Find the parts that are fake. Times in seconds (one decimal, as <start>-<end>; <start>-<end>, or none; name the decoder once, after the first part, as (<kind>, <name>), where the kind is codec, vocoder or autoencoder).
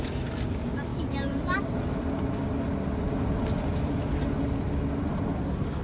none